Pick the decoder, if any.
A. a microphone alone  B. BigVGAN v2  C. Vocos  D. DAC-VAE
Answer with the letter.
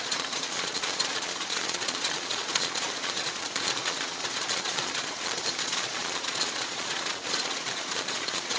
C